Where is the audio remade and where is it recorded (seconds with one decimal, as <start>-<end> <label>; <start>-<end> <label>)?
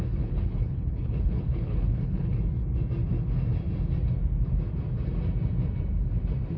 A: 0.0-2.3 remade; 2.3-6.6 recorded